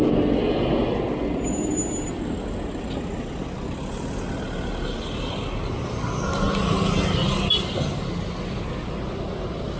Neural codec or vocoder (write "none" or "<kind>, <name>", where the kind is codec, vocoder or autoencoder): none